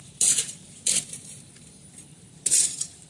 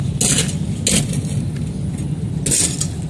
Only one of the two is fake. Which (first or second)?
first